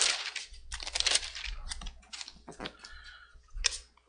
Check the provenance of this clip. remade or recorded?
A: recorded